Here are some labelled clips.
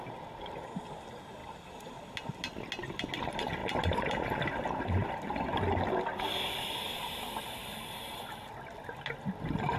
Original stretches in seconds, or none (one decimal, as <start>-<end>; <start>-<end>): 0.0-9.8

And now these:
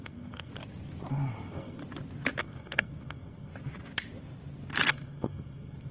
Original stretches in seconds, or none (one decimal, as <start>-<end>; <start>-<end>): 0.5-1.1; 1.8-2.4; 3.5-4.9

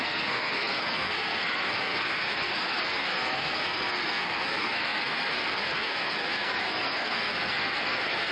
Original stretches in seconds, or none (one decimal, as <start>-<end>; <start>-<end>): none